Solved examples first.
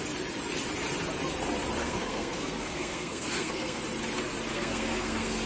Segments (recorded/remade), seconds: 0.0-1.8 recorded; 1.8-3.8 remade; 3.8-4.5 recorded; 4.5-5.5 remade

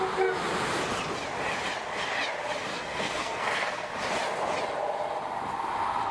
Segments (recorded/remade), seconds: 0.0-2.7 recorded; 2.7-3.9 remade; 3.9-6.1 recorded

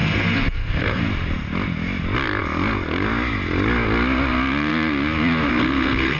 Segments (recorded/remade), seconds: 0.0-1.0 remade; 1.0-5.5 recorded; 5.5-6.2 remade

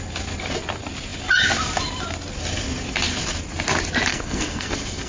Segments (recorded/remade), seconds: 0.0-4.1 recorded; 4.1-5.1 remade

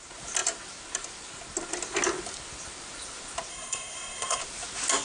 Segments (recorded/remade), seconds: 0.0-3.5 recorded; 3.5-4.4 remade; 4.4-5.0 recorded